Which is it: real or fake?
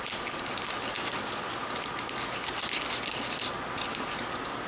real